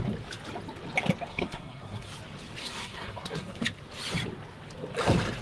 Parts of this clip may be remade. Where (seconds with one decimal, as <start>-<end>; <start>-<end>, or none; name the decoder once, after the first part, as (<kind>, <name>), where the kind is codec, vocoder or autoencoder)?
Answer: 1.3-2.1 (codec, SNAC); 2.6-3.6